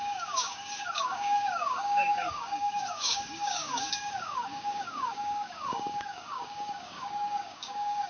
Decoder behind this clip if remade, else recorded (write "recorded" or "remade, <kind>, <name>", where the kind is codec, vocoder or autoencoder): remade, codec, DAC